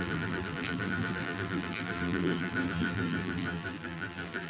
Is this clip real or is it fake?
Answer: fake